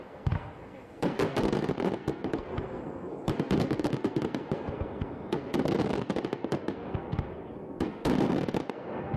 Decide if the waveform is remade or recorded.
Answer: remade